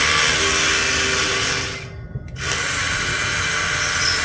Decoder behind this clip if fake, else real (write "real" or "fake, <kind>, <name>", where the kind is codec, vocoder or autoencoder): real